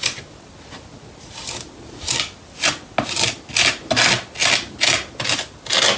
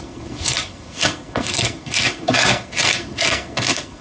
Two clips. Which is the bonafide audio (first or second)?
first